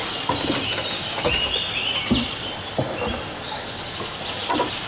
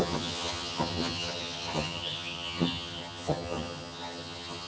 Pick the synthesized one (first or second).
second